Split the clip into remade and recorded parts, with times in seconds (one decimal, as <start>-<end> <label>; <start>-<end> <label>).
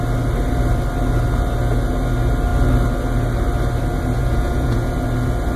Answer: 0.0-4.2 recorded; 4.2-4.9 remade; 4.9-5.6 recorded